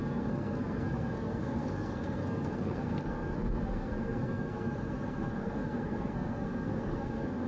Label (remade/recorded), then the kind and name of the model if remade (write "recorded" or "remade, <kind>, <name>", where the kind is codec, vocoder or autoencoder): remade, codec, SNAC